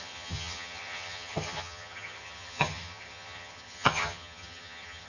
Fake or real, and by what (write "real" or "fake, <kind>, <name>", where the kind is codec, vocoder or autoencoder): fake, vocoder, HiFi-GAN